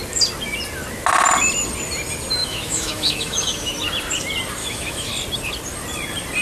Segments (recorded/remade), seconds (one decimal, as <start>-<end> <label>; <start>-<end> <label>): 0.0-2.4 recorded; 2.4-3.7 remade; 3.7-4.6 recorded; 4.6-5.1 remade; 5.1-6.4 recorded